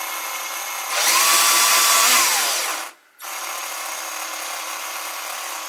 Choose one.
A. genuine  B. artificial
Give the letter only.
A